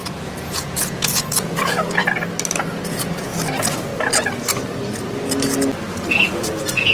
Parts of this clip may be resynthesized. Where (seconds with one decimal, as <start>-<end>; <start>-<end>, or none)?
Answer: 0.0-2.0; 2.9-3.3; 6.2-6.9